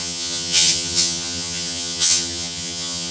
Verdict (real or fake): fake